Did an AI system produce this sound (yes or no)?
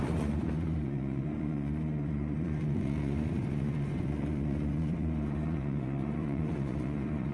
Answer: yes